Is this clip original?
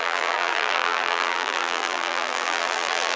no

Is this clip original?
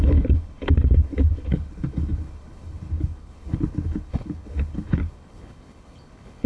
no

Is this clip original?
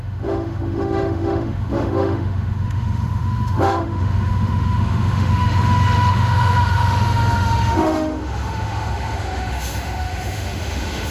no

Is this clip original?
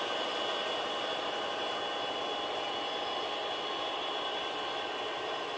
yes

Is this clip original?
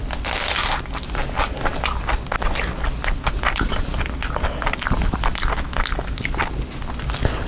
yes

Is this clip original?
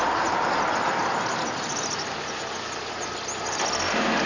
yes